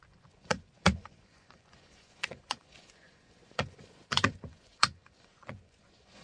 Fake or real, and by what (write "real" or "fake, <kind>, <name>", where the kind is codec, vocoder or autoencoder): fake, vocoder, Vocos